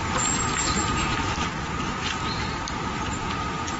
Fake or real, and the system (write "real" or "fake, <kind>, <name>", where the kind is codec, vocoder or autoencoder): real